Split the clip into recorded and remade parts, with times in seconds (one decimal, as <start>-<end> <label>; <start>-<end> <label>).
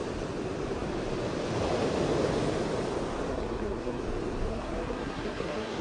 0.0-3.3 recorded; 3.3-4.0 remade; 4.0-4.5 recorded; 4.5-5.8 remade